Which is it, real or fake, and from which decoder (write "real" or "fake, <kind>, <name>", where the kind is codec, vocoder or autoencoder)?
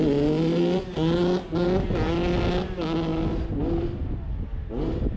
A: real